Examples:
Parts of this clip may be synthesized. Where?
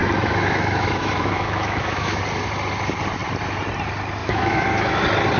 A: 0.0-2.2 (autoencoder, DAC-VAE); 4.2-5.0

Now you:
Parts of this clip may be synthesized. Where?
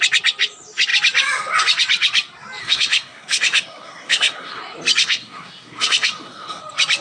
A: 2.6-4.6 (codec, SNAC); 5.0-6.6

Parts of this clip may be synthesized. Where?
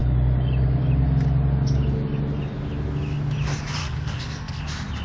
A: 3.8-4.6 (codec, SNAC)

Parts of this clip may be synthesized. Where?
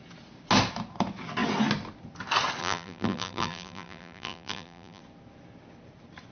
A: 2.6-5.0 (vocoder, BigVGAN v2)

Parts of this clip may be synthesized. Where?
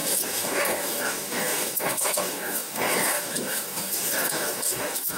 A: 0.0-5.2 (codec, DAC)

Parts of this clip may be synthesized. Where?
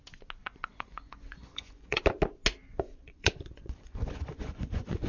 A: 0.4-2.0 (vocoder, Vocos); 2.7-5.1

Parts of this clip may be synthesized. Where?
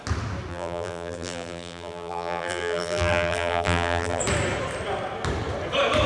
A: 0.5-4.2 (vocoder, BigVGAN v2)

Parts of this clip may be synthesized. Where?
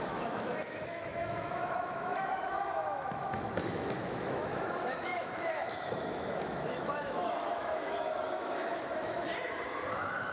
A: 0.0-9.3 (autoencoder, DAC-VAE); 9.9-10.3